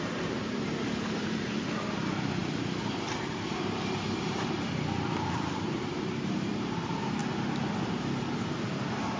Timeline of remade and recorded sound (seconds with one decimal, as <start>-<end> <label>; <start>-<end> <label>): 0.0-7.2 remade; 7.2-8.4 recorded; 8.4-9.2 remade